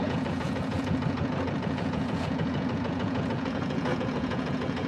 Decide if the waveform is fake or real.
fake